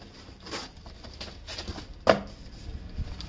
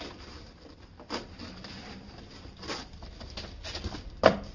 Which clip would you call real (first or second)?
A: first